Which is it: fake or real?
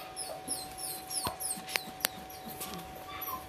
real